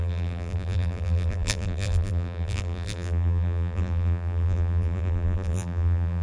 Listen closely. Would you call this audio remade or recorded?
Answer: remade